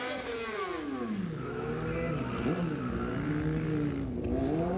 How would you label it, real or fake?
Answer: real